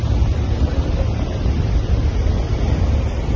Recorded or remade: recorded